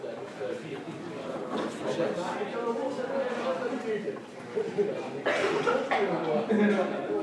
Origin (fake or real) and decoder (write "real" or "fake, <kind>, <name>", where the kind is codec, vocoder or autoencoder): real